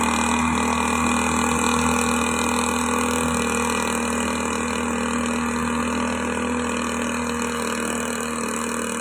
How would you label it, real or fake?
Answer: real